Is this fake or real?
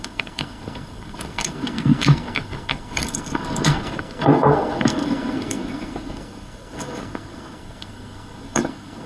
fake